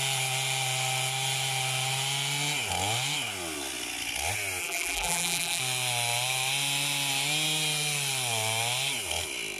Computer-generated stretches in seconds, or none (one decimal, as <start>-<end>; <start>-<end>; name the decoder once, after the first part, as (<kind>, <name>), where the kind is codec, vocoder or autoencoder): 4.6-5.6 (vocoder, BigVGAN v2)